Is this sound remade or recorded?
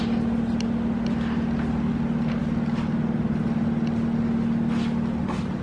recorded